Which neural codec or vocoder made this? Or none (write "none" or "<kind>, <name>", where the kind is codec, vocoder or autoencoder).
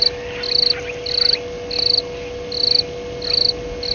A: none